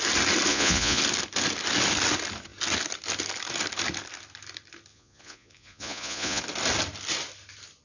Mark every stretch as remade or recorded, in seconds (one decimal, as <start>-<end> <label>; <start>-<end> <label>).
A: 0.0-0.5 recorded; 0.5-1.0 remade; 1.0-4.9 recorded; 4.9-6.4 remade; 6.4-7.8 recorded